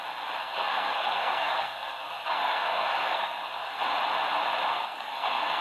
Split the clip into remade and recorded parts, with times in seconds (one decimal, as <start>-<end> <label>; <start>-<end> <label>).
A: 0.0-0.4 recorded; 0.4-3.8 remade; 3.8-4.7 recorded; 4.7-5.6 remade